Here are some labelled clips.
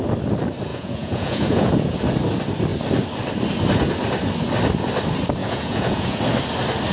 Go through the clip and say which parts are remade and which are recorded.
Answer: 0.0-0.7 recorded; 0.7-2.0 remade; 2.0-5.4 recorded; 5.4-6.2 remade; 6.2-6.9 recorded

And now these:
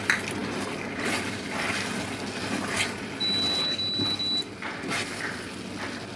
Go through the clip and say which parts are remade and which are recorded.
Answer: 0.0-6.2 recorded

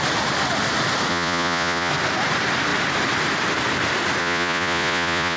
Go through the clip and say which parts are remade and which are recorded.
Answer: 0.0-1.1 recorded; 1.1-1.9 remade; 1.9-4.2 recorded; 4.2-5.4 remade

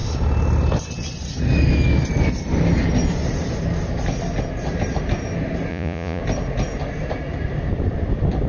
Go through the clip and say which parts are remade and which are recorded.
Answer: 0.0-5.7 recorded; 5.7-6.2 remade; 6.2-8.5 recorded

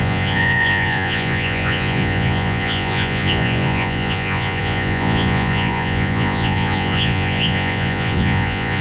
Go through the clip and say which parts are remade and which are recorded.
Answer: 0.0-8.8 remade

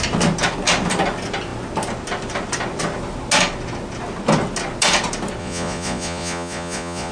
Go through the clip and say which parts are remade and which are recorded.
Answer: 0.0-5.4 recorded; 5.4-7.1 remade